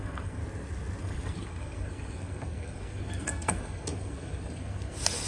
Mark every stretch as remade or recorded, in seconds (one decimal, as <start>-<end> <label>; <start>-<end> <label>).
0.0-0.4 remade; 0.4-1.0 recorded; 1.0-5.3 remade